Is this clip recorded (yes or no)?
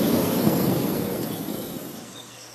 no